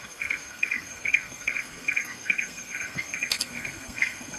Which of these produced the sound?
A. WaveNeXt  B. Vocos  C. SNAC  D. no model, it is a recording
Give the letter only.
C